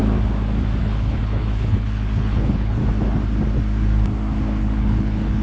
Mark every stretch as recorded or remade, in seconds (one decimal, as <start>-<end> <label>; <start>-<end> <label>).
0.0-0.8 recorded; 0.8-2.8 remade; 2.8-4.6 recorded; 4.6-5.4 remade